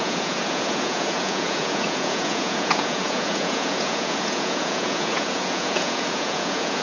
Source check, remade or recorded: remade